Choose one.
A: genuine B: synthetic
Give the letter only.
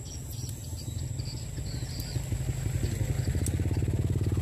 A